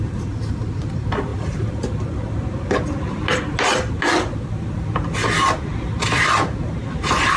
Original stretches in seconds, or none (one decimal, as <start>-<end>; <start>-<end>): 0.0-1.3; 1.8-7.4